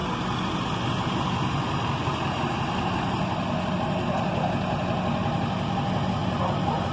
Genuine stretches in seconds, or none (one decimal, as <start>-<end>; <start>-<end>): 0.0-6.9